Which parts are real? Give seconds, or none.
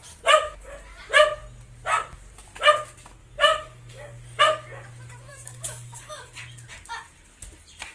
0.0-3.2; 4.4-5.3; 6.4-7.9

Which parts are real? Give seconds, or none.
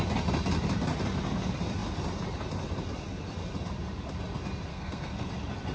0.0-4.7; 5.3-5.7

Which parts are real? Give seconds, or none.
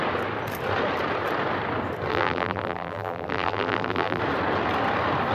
0.0-2.1; 4.2-5.3